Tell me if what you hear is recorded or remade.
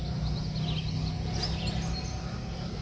recorded